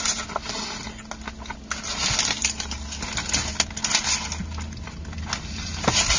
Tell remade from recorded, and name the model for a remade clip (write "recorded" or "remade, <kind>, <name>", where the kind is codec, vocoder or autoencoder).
recorded